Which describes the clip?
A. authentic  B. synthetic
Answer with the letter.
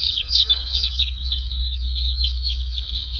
B